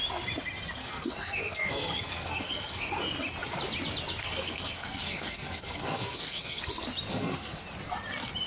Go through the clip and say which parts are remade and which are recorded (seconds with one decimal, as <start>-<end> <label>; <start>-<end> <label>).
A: 0.0-0.8 recorded; 0.8-2.9 remade; 2.9-4.2 recorded; 4.2-6.6 remade; 6.6-7.1 recorded; 7.1-7.6 remade; 7.6-8.5 recorded